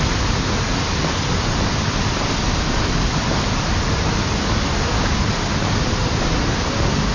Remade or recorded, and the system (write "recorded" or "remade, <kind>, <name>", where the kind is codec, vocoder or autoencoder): recorded